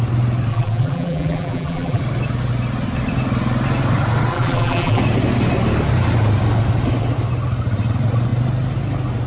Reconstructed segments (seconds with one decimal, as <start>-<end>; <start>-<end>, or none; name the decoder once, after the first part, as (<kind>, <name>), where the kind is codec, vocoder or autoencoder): 0.5-2.0 (vocoder, BigVGAN v2); 4.3-5.0